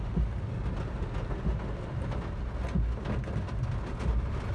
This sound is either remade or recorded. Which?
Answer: recorded